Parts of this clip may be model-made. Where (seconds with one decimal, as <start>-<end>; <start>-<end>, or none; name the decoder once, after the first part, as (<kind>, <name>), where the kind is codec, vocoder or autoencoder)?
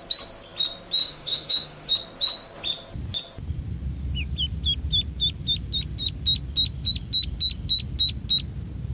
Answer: 1.0-1.9 (autoencoder, DAC-VAE)